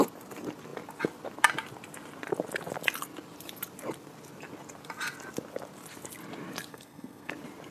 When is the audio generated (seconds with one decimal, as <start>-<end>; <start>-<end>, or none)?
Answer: 6.7-7.3